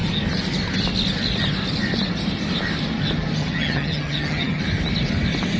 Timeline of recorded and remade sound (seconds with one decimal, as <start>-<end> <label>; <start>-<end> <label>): 0.0-3.4 recorded; 3.4-4.6 remade; 4.6-5.6 recorded